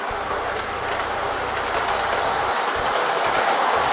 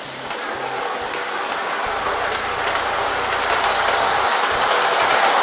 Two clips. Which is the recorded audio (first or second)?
second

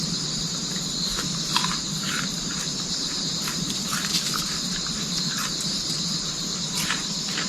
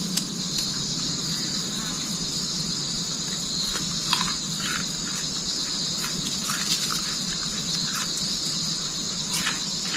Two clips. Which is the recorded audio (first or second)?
second